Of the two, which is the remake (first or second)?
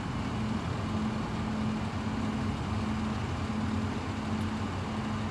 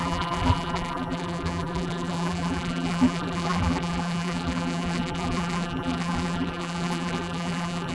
second